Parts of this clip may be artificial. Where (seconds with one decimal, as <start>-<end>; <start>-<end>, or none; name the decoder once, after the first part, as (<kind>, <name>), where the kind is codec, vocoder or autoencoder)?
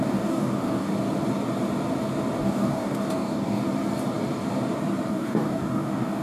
0.0-0.9 (codec, DAC); 2.4-3.6; 5.1-6.2